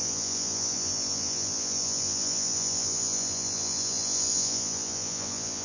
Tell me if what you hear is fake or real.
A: fake